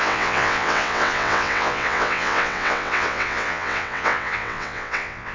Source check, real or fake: fake